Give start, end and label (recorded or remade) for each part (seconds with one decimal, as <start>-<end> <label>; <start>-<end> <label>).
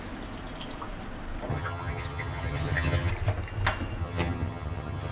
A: 0.0-1.5 recorded; 1.5-3.1 remade; 3.1-4.0 recorded; 4.0-5.1 remade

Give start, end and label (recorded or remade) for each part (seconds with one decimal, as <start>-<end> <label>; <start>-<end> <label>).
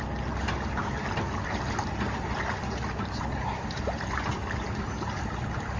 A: 0.0-5.8 recorded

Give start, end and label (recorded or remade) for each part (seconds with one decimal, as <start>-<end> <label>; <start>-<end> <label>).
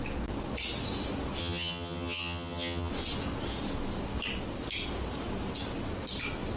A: 0.0-1.4 recorded; 1.4-2.9 remade; 2.9-6.6 recorded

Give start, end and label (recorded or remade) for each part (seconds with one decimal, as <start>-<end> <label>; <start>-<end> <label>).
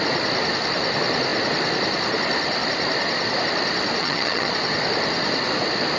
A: 0.0-4.0 recorded; 4.0-4.5 remade; 4.5-6.0 recorded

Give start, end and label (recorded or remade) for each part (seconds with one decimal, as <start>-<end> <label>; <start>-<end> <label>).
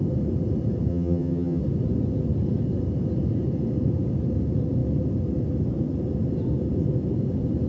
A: 0.0-0.9 recorded; 0.9-1.6 remade; 1.6-7.7 recorded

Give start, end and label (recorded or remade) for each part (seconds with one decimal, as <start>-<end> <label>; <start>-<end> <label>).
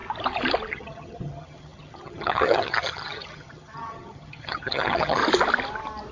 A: 0.0-0.7 recorded; 0.7-5.2 remade; 5.2-6.1 recorded